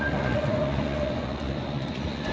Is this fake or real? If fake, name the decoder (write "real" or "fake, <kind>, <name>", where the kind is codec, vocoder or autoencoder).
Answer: fake, vocoder, Vocos